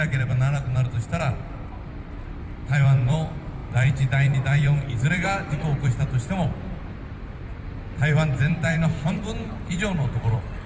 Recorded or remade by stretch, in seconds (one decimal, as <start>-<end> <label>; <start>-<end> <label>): 0.0-10.7 remade